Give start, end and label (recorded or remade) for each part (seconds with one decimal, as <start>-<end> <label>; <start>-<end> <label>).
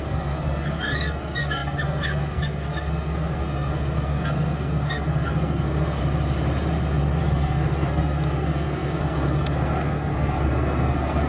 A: 0.0-6.0 remade; 6.0-7.2 recorded; 7.2-11.3 remade